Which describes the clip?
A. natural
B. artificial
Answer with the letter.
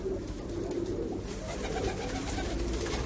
A